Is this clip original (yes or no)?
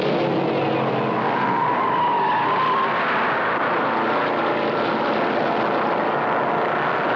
yes